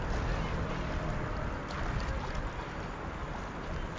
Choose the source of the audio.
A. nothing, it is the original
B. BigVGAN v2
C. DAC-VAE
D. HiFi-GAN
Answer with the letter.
A